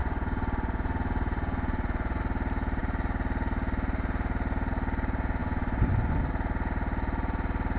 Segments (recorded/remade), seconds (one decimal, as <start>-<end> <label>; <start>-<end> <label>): 0.0-2.2 remade; 2.2-5.4 recorded; 5.4-6.2 remade; 6.2-7.8 recorded